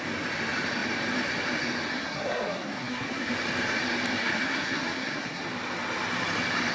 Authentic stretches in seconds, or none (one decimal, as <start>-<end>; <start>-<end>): 0.0-1.9; 3.3-4.2; 5.4-6.7